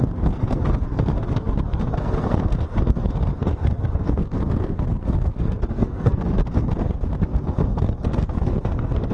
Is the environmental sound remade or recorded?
remade